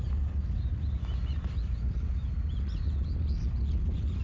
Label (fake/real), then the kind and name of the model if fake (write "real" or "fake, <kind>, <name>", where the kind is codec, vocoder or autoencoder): real